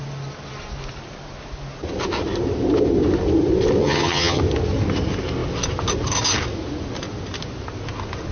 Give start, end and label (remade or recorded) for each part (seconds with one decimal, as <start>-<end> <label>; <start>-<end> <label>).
0.0-3.8 recorded; 3.8-4.4 remade; 4.4-8.3 recorded